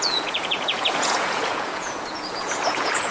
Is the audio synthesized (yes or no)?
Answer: yes